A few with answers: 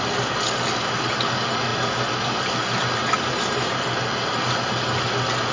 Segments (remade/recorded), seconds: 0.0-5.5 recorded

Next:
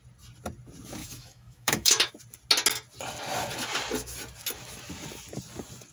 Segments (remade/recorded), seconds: 0.0-1.0 recorded; 1.0-2.1 remade; 2.1-5.9 recorded

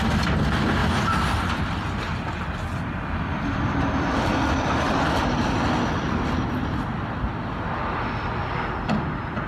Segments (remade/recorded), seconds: 0.0-0.8 recorded; 0.8-5.4 remade; 5.4-9.5 recorded

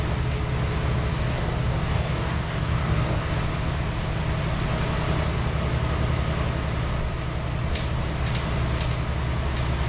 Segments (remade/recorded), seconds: 0.0-1.1 recorded; 1.1-3.3 remade; 3.3-9.9 recorded